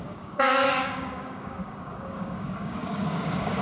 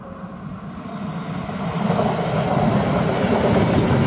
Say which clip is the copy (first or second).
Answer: first